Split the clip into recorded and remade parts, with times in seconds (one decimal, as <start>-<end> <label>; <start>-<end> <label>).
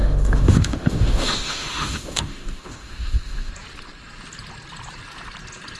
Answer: 0.0-3.5 remade; 3.5-5.8 recorded